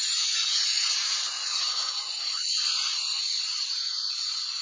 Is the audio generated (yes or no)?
no